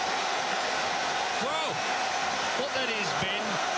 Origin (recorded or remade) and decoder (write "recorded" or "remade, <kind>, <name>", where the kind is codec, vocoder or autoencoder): recorded